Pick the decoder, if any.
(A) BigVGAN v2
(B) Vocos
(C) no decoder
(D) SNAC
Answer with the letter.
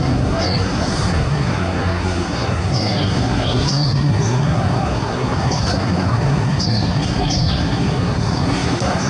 D